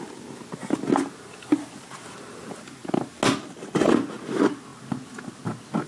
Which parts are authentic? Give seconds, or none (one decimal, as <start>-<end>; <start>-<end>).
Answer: 0.0-5.9